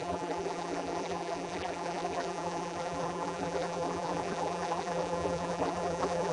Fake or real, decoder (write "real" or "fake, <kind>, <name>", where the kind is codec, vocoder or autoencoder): fake, vocoder, BigVGAN v2